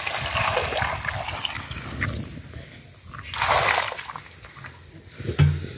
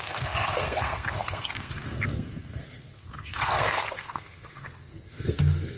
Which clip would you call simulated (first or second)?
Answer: second